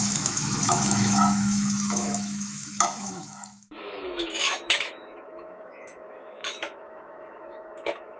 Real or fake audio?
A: fake